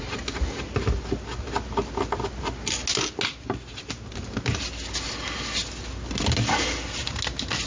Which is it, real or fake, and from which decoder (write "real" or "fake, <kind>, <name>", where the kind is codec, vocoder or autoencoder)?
real